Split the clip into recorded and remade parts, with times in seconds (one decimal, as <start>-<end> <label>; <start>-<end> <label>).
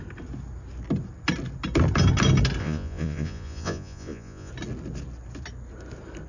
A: 0.0-2.6 recorded; 2.6-4.5 remade; 4.5-6.3 recorded